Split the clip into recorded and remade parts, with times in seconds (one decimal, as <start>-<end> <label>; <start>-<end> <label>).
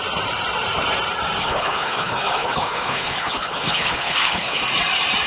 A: 0.0-1.4 recorded; 1.4-4.6 remade; 4.6-5.3 recorded